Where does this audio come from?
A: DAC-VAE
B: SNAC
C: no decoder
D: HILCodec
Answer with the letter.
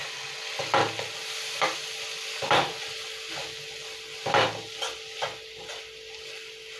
C